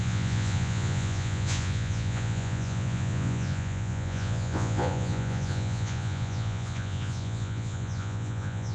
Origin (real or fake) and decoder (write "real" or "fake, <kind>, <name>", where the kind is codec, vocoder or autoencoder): fake, vocoder, Vocos